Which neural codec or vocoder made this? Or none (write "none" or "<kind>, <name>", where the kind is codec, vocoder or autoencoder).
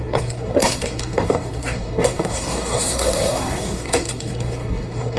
codec, SNAC